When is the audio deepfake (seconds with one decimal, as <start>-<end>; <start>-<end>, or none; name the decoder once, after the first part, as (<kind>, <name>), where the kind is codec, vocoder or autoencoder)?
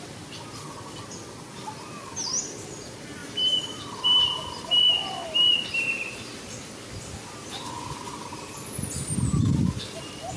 3.2-4.7 (vocoder, BigVGAN v2)